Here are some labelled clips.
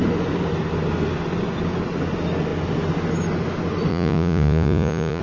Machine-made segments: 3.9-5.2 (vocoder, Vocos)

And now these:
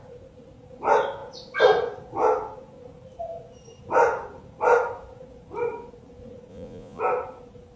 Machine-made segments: 6.5-7.0 (vocoder, Vocos)

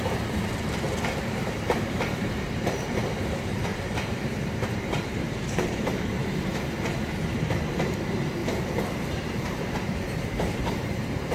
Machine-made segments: 0.0-6.2 (vocoder, BigVGAN v2); 7.7-11.3

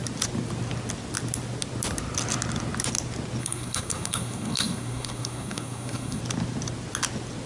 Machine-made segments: 3.4-6.2 (codec, SNAC)